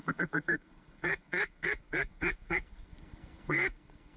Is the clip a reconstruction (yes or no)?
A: yes